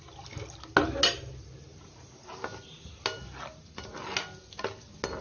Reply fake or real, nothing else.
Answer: real